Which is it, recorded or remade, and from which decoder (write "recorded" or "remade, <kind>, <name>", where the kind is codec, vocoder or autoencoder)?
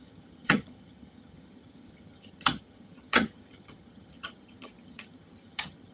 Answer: remade, vocoder, HiFi-GAN